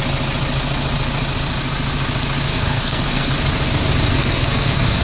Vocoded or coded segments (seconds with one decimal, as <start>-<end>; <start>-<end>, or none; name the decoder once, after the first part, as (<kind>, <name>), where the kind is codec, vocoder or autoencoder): 2.5-3.3 (codec, SNAC); 4.1-5.0